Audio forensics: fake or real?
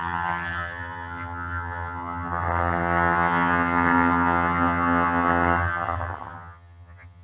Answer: fake